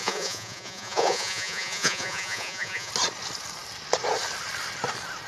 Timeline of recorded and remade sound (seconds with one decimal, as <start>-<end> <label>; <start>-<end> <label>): 0.0-2.9 remade; 2.9-5.3 recorded

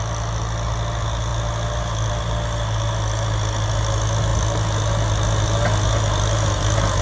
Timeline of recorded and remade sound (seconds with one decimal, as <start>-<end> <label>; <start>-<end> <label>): 0.0-7.0 recorded

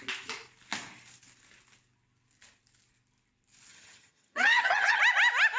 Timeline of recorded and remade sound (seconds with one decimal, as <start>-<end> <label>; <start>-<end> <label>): 0.0-3.7 recorded; 3.7-5.0 remade; 5.0-5.6 recorded

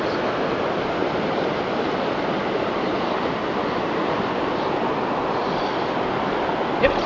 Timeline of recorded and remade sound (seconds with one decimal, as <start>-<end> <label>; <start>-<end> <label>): 0.0-7.1 recorded